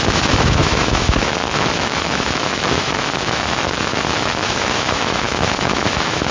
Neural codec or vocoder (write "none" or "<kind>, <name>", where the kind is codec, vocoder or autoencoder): autoencoder, DAC-VAE